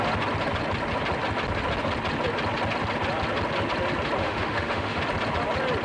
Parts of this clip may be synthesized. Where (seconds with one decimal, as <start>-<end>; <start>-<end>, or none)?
4.2-5.0

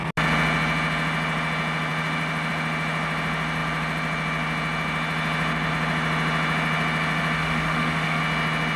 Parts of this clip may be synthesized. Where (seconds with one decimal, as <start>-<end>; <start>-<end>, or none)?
7.4-8.2

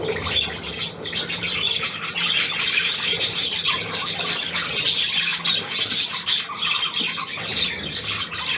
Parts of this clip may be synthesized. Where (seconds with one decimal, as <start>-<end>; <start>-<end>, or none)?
none

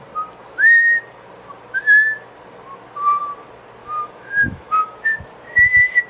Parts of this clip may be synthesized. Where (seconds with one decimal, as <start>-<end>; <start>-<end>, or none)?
3.8-4.9

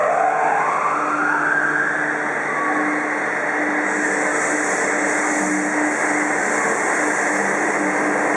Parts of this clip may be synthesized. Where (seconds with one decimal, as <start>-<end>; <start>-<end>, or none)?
none